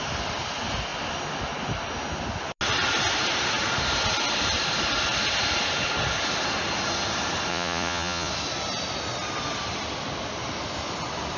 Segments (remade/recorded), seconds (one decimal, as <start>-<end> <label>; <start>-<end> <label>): 0.0-7.5 recorded; 7.5-8.3 remade; 8.3-11.4 recorded